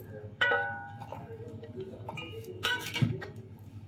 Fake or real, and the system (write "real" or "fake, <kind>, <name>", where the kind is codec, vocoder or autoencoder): fake, codec, DAC